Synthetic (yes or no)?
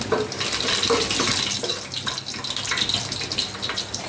no